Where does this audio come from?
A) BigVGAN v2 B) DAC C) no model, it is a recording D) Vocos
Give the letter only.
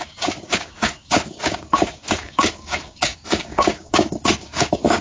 B